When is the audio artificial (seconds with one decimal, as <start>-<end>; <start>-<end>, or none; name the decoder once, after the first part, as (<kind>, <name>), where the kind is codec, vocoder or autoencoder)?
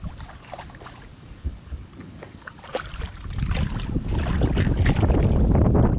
1.1-2.6 (codec, DAC)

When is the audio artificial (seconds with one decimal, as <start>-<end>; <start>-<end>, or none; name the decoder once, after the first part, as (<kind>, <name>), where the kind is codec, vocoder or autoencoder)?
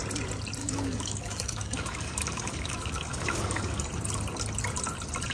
0.6-3.8 (codec, DAC)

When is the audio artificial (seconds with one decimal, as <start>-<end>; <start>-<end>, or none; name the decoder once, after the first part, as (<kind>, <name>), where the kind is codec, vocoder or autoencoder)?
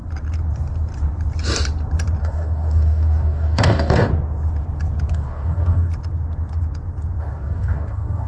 2.2-4.1 (codec, DAC); 5.1-5.9; 7.2-8.3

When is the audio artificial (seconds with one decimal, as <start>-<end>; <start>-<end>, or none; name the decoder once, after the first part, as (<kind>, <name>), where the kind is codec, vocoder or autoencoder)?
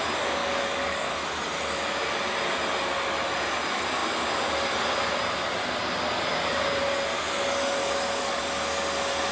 0.4-1.1 (codec, DAC); 7.8-8.4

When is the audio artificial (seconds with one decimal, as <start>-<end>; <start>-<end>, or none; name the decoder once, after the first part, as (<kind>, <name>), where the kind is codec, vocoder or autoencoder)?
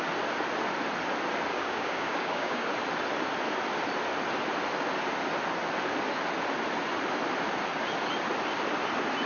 1.5-2.7 (codec, DAC)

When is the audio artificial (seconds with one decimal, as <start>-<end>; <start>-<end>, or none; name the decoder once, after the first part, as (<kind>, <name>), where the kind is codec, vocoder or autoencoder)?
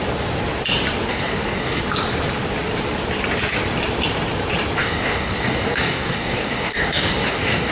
1.1-1.8 (codec, DAC); 4.8-7.7